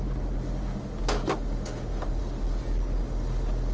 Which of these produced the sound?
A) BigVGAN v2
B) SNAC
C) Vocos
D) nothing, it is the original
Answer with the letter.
D